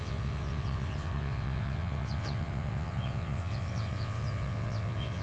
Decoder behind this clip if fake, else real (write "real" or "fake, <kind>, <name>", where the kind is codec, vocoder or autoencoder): fake, vocoder, WaveNeXt